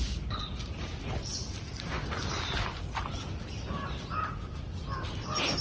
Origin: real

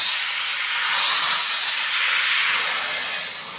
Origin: real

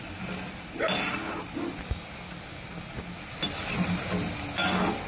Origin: real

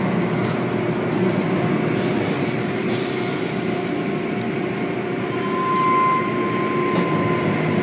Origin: real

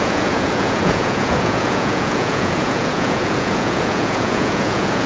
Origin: fake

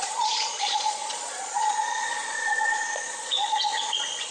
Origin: fake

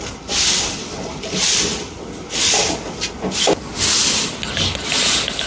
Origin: real